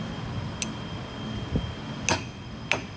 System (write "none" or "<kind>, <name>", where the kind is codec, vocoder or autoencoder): none